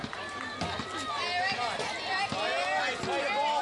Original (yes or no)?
yes